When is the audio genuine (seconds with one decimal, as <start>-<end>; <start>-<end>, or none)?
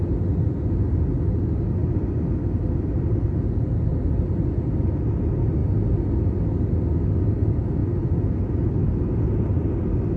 0.0-10.2